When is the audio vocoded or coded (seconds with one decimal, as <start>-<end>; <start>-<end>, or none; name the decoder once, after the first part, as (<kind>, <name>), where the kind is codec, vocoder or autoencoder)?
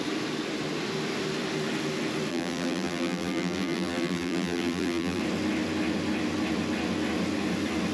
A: 2.3-5.2 (vocoder, BigVGAN v2)